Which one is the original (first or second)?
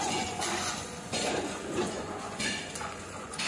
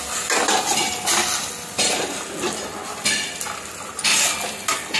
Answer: second